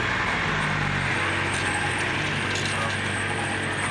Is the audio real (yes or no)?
yes